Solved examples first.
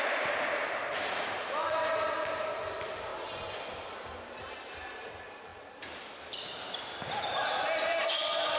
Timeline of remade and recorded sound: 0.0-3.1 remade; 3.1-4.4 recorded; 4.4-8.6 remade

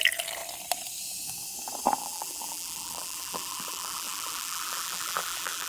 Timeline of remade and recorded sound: 0.0-2.0 recorded; 2.0-5.7 remade

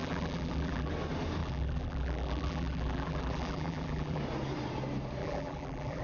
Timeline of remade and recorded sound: 0.0-0.9 remade; 0.9-1.4 recorded; 1.4-4.2 remade; 4.2-5.2 recorded; 5.2-6.0 remade

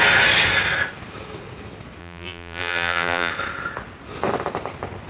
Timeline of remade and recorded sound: 0.0-2.0 recorded; 2.0-3.3 remade; 3.3-5.1 recorded

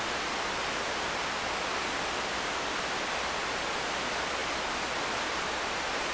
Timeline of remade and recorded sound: 0.0-6.1 recorded

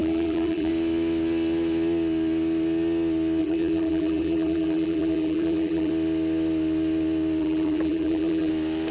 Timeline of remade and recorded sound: 0.0-0.7 remade; 0.7-3.4 recorded; 3.4-5.9 remade; 5.9-7.4 recorded; 7.4-8.5 remade; 8.5-8.9 recorded

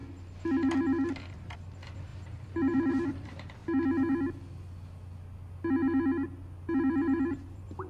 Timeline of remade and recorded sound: 0.0-1.3 recorded; 1.3-3.6 remade; 3.6-6.8 recorded; 6.8-7.9 remade

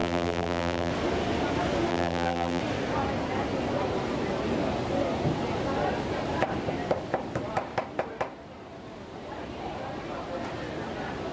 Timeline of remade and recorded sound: 0.0-0.9 remade; 0.9-1.9 recorded; 1.9-2.6 remade; 2.6-11.3 recorded